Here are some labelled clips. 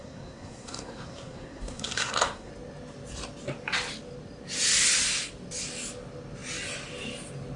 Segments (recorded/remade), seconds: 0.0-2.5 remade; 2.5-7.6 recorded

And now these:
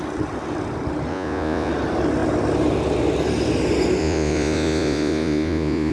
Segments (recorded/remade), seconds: 0.0-1.1 recorded; 1.1-1.7 remade; 1.7-4.0 recorded; 4.0-5.9 remade

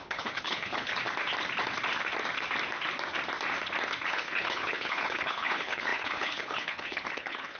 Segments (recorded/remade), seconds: 0.0-0.9 remade; 0.9-4.1 recorded; 4.1-7.6 remade

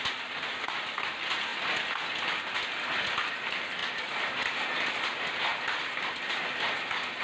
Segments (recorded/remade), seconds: 0.0-7.2 recorded

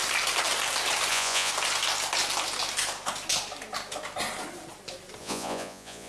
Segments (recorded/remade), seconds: 0.0-1.1 recorded; 1.1-1.5 remade; 1.5-5.2 recorded; 5.2-6.1 remade

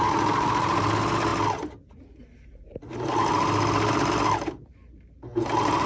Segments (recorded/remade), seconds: 0.0-5.9 recorded